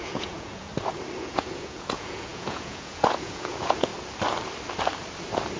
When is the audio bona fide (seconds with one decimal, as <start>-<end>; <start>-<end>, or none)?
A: 0.7-1.2; 3.9-5.6